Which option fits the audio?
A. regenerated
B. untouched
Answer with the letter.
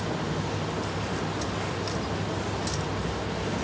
B